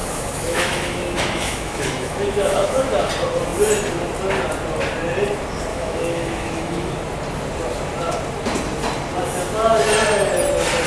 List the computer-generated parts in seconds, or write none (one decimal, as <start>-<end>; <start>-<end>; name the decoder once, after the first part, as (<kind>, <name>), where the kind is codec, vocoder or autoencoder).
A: 0.0-3.1 (autoencoder, DAC-VAE); 5.7-6.9